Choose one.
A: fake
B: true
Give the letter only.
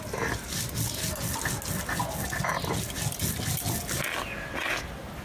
B